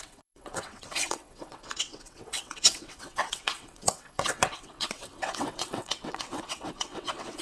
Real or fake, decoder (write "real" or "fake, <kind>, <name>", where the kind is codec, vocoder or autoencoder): fake, vocoder, WaveNeXt